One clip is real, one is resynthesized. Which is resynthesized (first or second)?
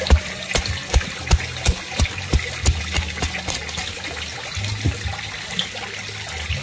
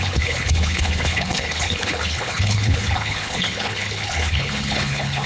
second